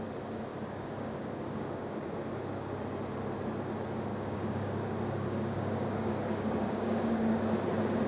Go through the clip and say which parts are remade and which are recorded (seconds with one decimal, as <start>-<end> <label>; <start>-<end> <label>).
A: 0.0-0.5 recorded; 0.5-2.0 remade; 2.0-4.1 recorded; 4.1-7.4 remade; 7.4-8.1 recorded